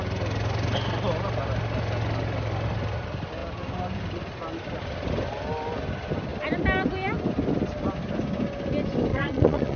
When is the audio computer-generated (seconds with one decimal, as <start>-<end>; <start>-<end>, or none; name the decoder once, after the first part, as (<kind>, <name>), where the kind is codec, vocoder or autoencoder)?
9.1-9.8 (vocoder, Vocos)